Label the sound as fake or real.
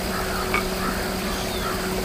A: real